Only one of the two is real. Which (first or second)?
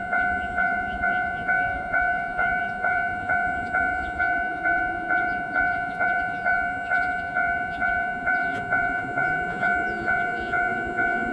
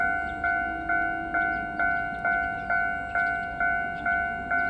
second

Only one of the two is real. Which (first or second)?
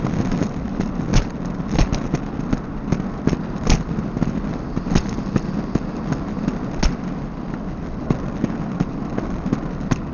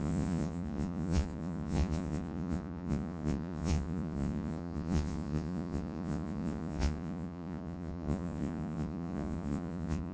first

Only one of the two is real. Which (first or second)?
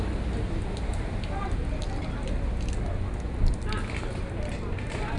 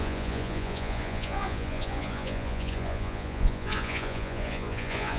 first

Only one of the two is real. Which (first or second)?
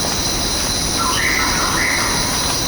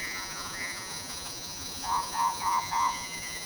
first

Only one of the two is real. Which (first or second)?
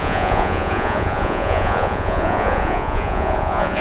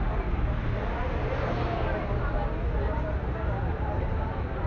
second